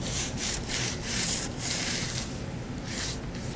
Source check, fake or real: fake